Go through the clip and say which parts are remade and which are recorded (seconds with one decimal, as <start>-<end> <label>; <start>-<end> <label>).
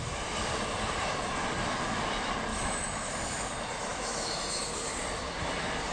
0.0-2.5 recorded; 2.5-3.1 remade; 3.1-3.9 recorded; 3.9-4.6 remade; 4.6-5.9 recorded